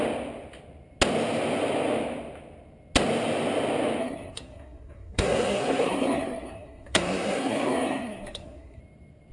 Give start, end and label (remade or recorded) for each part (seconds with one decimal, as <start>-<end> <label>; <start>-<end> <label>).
0.0-4.0 recorded; 4.0-8.8 remade; 8.8-9.3 recorded